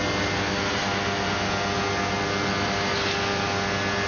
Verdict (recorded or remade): recorded